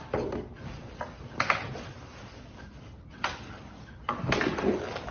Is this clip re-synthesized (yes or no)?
no